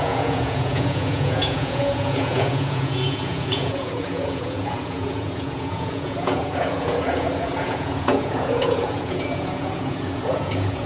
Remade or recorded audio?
remade